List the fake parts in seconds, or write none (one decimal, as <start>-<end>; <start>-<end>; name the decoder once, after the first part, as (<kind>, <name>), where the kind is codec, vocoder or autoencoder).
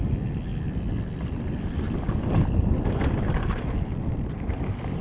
none